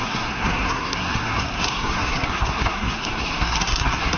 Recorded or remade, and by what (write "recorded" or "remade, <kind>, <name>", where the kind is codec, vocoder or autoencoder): remade, codec, SNAC